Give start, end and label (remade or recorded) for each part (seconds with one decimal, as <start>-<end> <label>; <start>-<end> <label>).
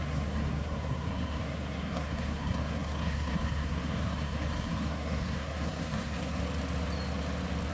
0.0-6.4 remade; 6.4-7.7 recorded